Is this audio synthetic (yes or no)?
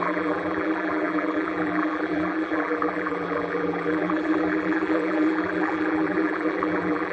yes